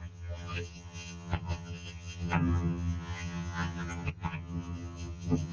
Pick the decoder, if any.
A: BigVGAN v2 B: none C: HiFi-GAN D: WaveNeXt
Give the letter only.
C